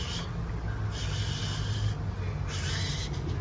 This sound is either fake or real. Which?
real